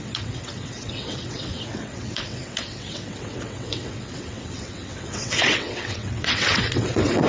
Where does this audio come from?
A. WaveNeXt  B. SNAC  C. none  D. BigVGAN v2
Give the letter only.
A